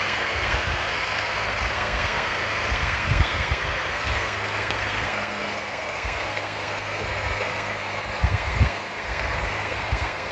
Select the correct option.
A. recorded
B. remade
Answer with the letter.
B